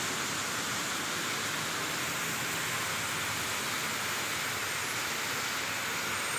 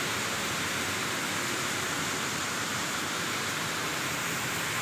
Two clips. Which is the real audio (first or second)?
first